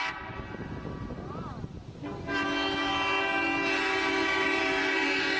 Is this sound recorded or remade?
recorded